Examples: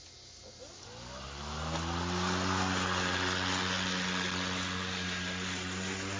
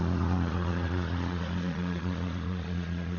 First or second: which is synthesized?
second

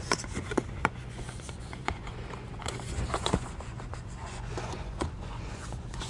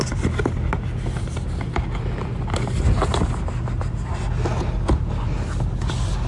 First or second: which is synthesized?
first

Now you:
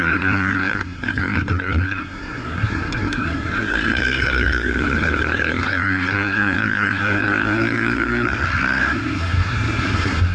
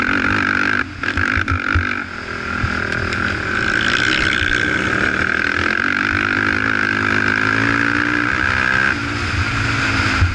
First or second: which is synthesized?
first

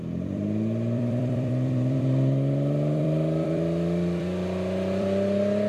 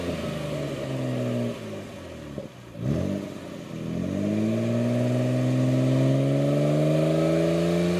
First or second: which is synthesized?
first